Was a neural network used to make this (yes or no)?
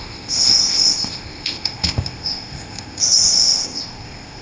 yes